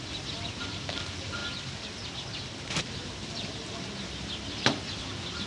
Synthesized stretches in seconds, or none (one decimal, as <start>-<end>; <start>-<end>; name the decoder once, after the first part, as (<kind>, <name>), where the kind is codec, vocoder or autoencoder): 0.0-5.5 (vocoder, BigVGAN v2)